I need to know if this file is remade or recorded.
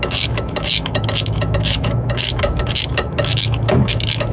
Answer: remade